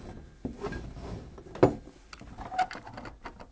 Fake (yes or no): no